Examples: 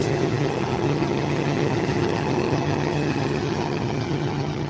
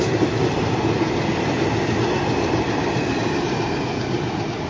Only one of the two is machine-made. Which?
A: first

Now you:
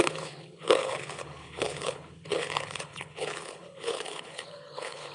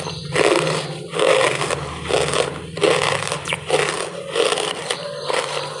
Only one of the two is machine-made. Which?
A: first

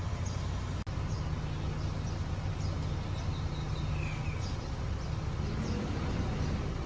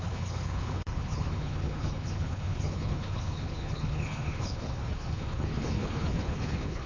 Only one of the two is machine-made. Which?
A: second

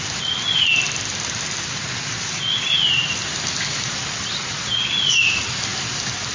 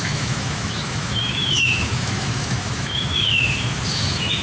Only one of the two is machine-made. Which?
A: second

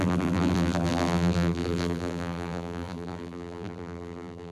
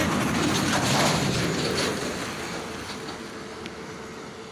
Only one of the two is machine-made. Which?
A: first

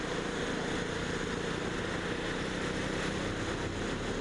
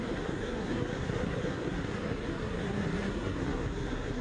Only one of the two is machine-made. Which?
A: second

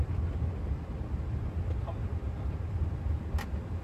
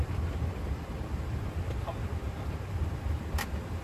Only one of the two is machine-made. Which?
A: second